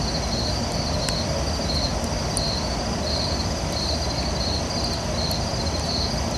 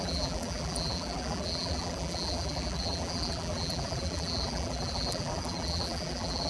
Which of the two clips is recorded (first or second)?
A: first